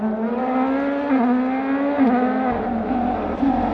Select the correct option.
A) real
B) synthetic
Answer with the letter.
A